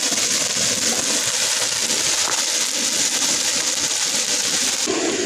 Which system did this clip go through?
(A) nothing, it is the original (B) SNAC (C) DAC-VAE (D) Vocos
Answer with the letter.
A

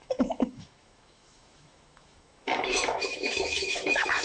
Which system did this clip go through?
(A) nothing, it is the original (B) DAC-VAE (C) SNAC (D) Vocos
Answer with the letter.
B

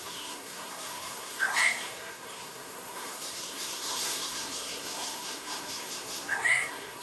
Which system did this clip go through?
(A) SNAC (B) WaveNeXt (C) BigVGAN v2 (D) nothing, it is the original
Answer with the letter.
A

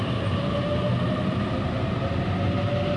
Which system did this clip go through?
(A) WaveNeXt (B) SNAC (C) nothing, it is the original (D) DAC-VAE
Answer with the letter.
C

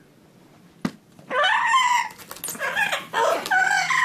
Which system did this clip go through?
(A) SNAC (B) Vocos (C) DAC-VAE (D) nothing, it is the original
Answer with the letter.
D